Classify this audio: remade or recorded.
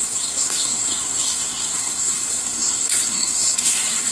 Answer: remade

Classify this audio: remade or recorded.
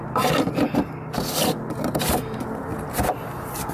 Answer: recorded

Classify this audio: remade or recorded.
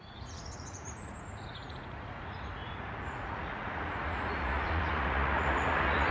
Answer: remade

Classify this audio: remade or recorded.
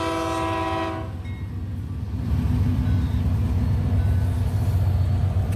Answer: recorded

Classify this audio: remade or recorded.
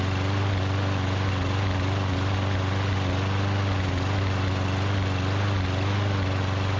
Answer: recorded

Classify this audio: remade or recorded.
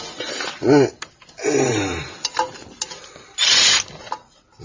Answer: recorded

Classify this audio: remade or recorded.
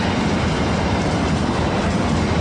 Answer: recorded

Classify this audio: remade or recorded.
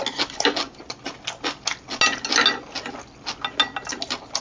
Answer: recorded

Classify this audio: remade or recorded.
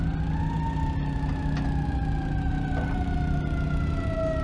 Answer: recorded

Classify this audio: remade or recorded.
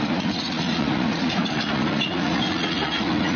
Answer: remade